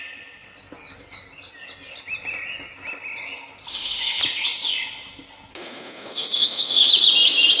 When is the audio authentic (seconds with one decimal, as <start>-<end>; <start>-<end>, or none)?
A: 0.0-3.7; 4.2-5.5; 6.9-7.6